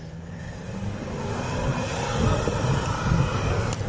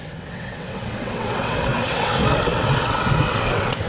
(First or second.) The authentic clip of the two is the first